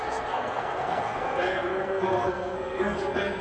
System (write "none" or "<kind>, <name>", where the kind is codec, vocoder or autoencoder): codec, SNAC